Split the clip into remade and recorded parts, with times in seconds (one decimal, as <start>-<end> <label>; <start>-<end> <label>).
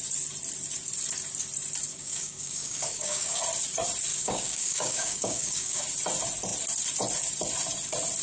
0.0-1.9 recorded; 1.9-3.4 remade; 3.4-4.1 recorded; 4.1-5.8 remade; 5.8-8.2 recorded